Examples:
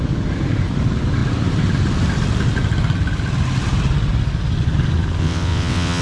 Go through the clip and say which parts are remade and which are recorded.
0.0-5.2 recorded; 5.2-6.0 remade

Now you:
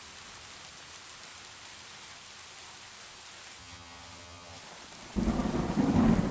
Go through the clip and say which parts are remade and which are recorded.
0.0-3.6 recorded; 3.6-4.6 remade; 4.6-6.3 recorded

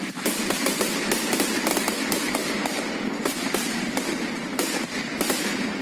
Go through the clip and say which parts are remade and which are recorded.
0.0-5.8 recorded